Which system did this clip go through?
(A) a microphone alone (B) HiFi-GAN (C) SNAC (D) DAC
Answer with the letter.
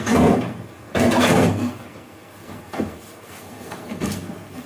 C